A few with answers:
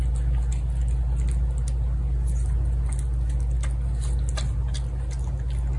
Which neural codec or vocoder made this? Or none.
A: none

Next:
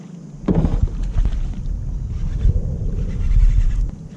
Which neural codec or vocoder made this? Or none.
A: none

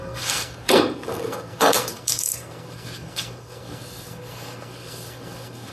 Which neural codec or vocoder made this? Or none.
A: codec, SNAC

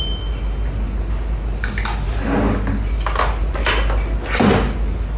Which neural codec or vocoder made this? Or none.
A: none